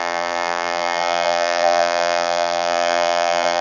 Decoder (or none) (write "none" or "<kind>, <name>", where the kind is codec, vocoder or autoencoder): vocoder, BigVGAN v2